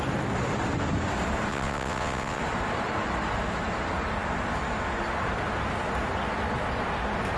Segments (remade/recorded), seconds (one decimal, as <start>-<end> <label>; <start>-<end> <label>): 0.0-1.5 recorded; 1.5-2.4 remade; 2.4-7.4 recorded